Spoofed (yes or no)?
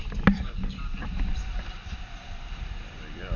yes